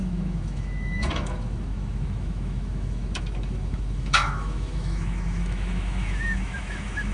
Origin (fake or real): fake